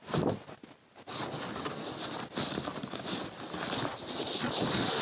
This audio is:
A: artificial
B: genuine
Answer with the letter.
B